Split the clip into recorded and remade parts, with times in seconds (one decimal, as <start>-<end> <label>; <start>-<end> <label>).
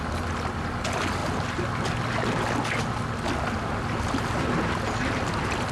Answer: 0.0-5.7 recorded